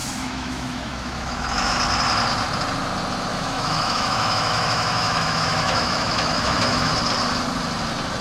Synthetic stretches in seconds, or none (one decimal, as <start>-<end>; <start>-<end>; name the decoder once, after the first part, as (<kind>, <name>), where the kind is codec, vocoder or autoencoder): 0.0-1.8 (autoencoder, DAC-VAE); 3.3-6.9